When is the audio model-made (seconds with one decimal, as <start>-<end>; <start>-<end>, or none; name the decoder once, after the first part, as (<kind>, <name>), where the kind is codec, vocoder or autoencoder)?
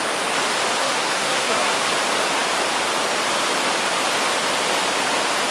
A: 0.8-1.8 (codec, SNAC)